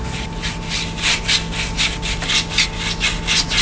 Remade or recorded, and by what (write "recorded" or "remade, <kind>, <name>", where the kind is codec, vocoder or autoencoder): recorded